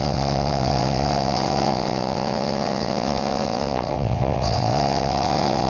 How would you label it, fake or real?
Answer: fake